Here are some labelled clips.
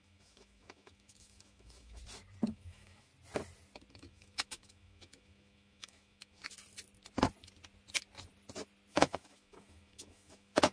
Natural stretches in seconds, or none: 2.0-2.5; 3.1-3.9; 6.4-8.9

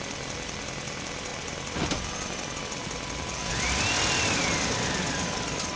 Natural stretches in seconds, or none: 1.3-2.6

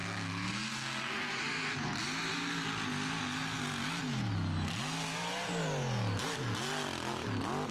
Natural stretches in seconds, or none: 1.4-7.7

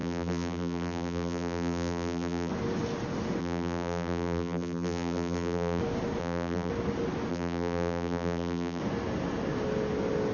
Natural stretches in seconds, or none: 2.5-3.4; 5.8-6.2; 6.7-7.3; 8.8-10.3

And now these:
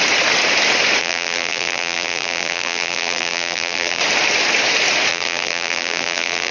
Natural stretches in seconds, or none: 0.0-1.0; 4.0-5.1

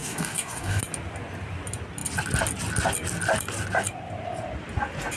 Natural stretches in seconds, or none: 0.8-5.2